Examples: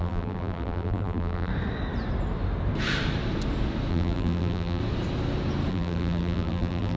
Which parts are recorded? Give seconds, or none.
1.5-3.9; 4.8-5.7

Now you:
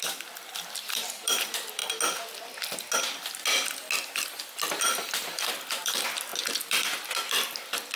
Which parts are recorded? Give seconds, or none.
1.8-4.4

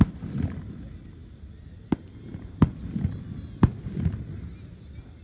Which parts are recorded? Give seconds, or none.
0.0-5.2

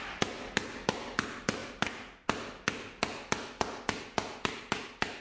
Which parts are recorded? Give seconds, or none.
0.0-5.2

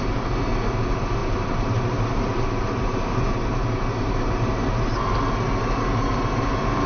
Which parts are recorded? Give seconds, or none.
0.0-1.2; 4.6-6.9

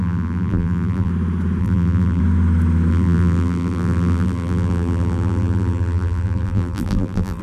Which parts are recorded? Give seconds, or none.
1.1-1.6; 2.2-2.9

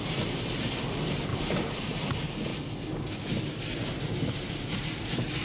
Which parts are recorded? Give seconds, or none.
0.0-1.3; 2.1-5.4